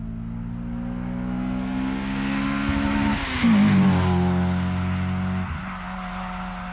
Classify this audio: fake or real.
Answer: real